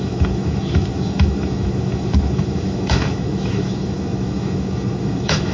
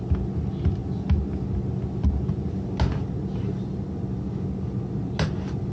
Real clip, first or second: second